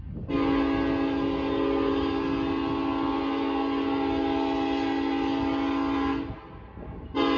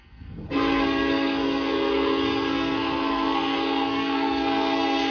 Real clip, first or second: first